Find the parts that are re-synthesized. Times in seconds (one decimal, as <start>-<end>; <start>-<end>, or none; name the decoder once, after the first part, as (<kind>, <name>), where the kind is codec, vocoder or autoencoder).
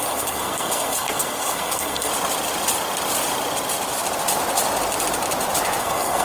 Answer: 0.0-2.1 (codec, SNAC); 5.8-6.2